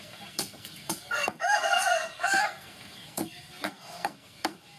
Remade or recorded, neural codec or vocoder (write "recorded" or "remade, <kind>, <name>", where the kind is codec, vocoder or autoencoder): remade, codec, SNAC